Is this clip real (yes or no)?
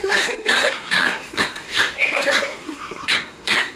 no